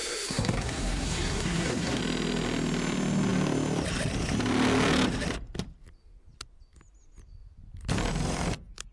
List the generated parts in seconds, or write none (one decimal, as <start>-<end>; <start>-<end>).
0.0-2.0